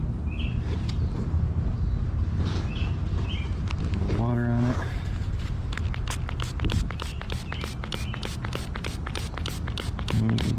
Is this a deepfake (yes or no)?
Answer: no